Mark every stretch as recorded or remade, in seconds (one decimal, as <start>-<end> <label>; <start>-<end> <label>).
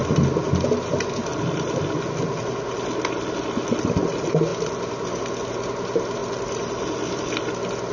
0.0-7.9 recorded